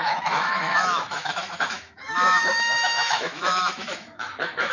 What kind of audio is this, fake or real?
fake